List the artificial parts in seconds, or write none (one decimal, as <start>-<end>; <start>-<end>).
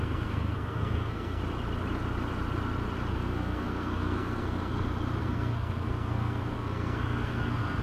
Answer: 0.0-1.4; 3.1-4.7; 5.2-7.8